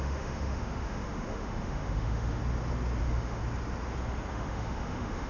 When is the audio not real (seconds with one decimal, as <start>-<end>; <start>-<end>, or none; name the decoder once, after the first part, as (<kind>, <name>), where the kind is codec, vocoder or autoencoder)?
0.0-2.4 (autoencoder, DAC-VAE); 3.0-3.4; 4.3-5.3